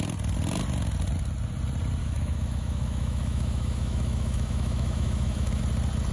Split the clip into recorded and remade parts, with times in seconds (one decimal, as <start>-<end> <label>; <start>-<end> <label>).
0.0-2.0 recorded; 2.0-5.6 remade; 5.6-6.1 recorded